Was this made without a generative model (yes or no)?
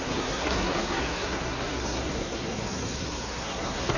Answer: no